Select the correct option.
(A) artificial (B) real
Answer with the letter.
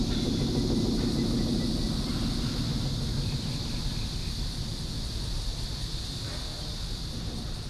B